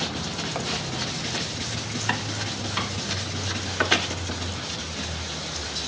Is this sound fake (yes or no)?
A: no